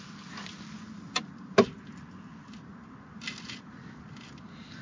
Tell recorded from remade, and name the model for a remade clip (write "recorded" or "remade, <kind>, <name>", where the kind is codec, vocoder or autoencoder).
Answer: recorded